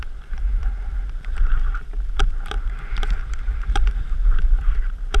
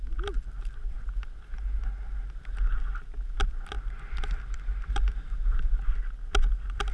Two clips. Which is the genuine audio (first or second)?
second